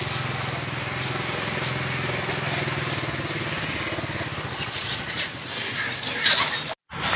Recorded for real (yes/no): yes